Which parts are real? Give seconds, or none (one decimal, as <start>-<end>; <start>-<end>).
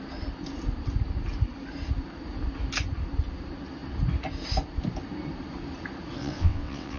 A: 0.0-6.2